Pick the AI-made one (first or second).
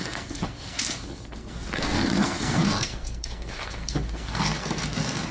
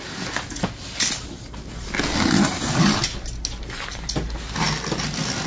first